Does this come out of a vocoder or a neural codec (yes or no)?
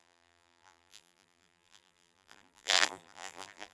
yes